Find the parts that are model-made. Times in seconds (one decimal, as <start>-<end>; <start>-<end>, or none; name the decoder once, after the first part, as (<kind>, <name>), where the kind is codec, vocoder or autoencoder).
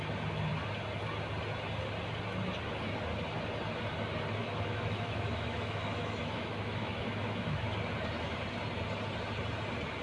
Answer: 4.4-7.6 (autoencoder, DAC-VAE)